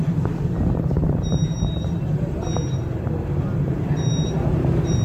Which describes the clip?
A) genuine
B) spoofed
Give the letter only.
B